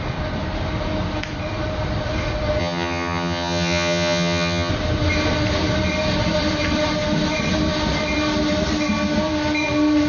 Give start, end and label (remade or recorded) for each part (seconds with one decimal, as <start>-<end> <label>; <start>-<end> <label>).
0.0-2.6 recorded; 2.6-4.7 remade; 4.7-10.1 recorded

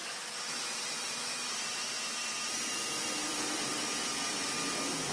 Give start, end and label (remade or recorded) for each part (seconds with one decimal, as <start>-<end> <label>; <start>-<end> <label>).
0.0-5.1 recorded

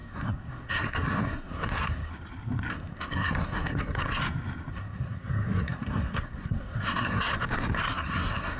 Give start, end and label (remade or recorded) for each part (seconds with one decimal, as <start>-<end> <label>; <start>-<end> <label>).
0.0-2.1 remade; 2.1-2.7 recorded; 2.7-4.0 remade; 4.0-4.7 recorded; 4.7-7.3 remade; 7.3-7.9 recorded; 7.9-8.6 remade

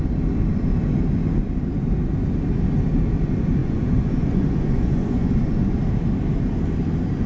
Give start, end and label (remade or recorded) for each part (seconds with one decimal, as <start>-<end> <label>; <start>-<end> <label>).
0.0-3.6 recorded; 3.6-5.8 remade; 5.8-7.3 recorded

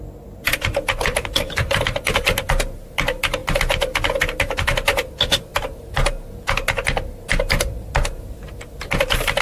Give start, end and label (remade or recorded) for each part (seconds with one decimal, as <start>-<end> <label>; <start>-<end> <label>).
0.0-0.5 recorded; 0.5-1.8 remade; 1.8-9.4 recorded

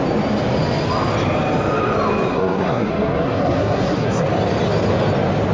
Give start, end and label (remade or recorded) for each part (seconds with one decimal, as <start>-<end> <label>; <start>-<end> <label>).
0.0-2.3 recorded; 2.3-4.3 remade; 4.3-5.5 recorded

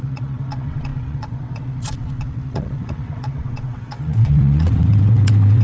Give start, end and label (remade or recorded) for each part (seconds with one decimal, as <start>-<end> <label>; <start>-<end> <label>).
0.0-5.6 remade

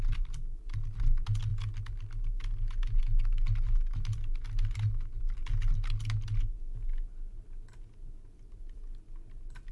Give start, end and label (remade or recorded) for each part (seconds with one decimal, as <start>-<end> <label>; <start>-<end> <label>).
0.0-9.7 recorded